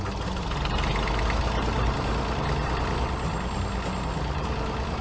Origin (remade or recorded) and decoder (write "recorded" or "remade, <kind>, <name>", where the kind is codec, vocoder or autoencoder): recorded